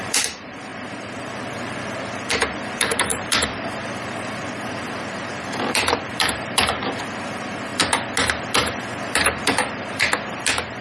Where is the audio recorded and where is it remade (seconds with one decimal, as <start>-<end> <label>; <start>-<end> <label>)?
0.0-7.7 remade; 7.7-8.9 recorded; 8.9-10.8 remade